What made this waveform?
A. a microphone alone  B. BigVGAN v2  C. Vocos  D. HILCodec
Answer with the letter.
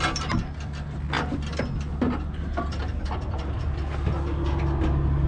A